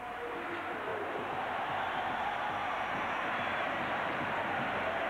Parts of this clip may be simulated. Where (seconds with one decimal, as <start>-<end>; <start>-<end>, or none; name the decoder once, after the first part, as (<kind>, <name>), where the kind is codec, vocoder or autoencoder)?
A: 0.9-1.6 (vocoder, BigVGAN v2); 2.6-4.2